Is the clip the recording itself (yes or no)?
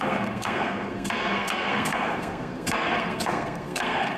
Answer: no